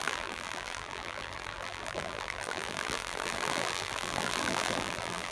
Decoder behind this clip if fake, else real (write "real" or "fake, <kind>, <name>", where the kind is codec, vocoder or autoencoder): fake, vocoder, BigVGAN v2